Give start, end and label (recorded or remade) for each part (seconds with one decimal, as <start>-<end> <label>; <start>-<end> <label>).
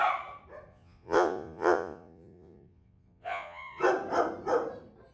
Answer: 0.0-0.7 recorded; 0.7-3.8 remade; 3.8-5.1 recorded